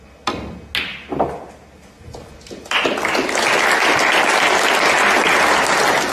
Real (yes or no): yes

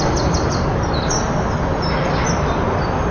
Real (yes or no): yes